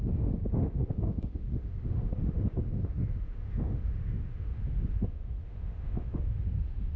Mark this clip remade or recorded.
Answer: remade